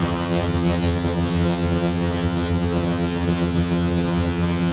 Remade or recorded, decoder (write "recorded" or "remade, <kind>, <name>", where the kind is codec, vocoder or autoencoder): remade, vocoder, HiFi-GAN